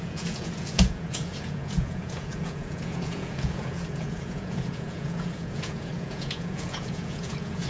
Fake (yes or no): yes